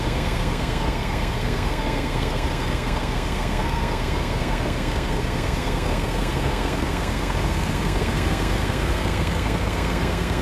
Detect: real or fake fake